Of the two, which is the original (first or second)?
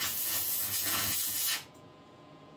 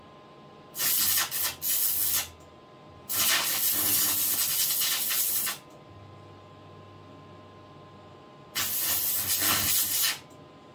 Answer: second